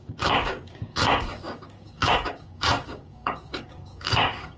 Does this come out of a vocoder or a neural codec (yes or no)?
yes